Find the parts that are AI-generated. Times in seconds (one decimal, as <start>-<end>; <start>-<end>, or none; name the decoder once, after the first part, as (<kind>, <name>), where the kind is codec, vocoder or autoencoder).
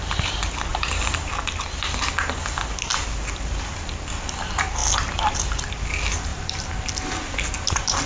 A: 0.7-1.3 (vocoder, BigVGAN v2); 6.3-6.9